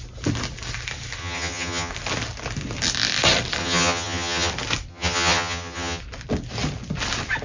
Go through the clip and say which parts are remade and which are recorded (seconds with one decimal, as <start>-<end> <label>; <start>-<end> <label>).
0.0-1.2 recorded; 1.2-1.9 remade; 1.9-3.6 recorded; 3.6-4.5 remade; 4.5-4.9 recorded; 4.9-6.0 remade; 6.0-7.4 recorded